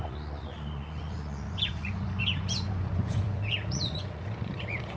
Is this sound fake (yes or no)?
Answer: yes